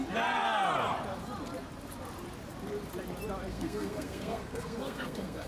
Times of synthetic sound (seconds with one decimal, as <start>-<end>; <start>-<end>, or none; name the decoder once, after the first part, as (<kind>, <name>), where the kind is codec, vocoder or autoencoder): 3.5-5.5 (codec, SNAC)